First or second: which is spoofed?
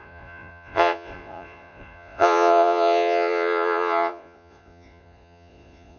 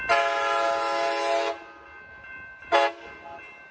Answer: first